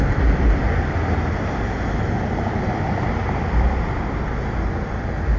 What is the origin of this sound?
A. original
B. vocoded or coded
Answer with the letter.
A